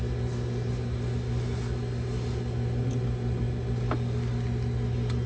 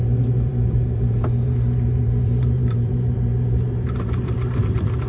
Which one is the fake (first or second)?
second